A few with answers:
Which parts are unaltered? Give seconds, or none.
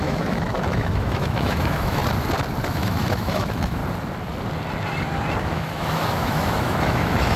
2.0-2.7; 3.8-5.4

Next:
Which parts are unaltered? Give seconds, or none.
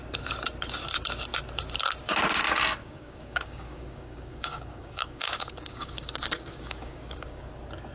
0.0-2.8; 7.5-7.9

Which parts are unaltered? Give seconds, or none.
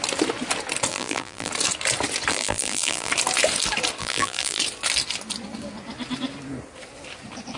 0.0-0.9; 1.5-2.3; 3.1-4.0; 4.6-7.6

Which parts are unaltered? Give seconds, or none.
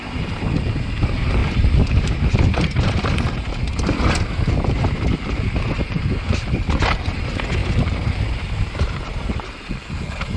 0.0-1.4; 3.4-7.6; 9.7-10.4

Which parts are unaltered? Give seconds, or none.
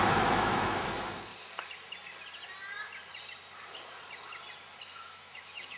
1.3-4.8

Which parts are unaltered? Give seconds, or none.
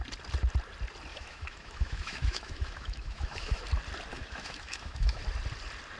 0.0-1.1; 3.6-4.1; 5.2-6.0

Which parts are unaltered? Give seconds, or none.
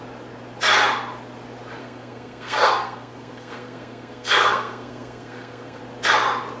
0.0-1.8; 5.8-6.6